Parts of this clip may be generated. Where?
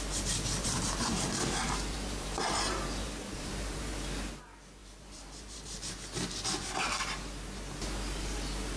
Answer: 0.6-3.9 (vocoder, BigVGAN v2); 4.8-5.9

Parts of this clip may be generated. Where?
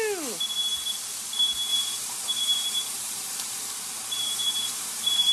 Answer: 1.7-5.3 (vocoder, BigVGAN v2)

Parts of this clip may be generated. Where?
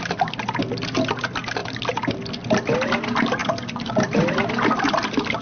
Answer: none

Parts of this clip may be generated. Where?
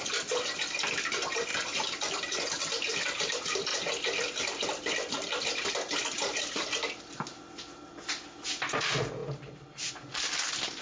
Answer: 3.7-7.0 (vocoder, BigVGAN v2)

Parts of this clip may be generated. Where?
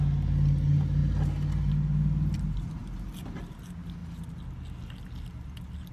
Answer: none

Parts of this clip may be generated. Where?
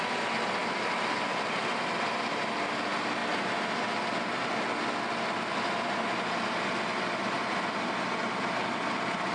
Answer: 0.6-2.2 (vocoder, BigVGAN v2); 3.2-3.9